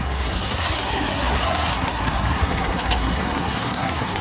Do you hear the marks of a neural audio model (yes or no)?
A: yes